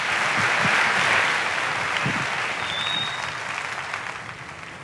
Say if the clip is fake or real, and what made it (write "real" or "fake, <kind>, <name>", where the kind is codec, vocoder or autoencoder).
real